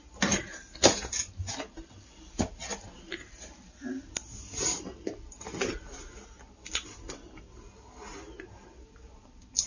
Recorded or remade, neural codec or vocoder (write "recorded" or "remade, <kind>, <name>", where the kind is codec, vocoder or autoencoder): recorded